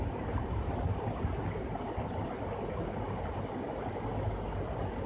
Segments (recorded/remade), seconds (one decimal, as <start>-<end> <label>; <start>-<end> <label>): 0.0-5.1 recorded